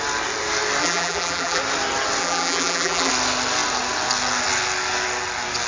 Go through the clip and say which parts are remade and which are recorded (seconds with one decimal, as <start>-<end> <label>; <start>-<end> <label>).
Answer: 0.0-0.8 recorded; 0.8-1.6 remade; 1.6-2.2 recorded; 2.2-3.1 remade; 3.1-5.7 recorded